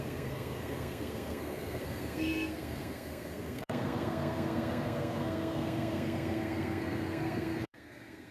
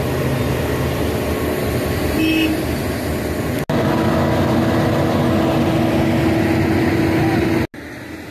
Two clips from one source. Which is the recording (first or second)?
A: second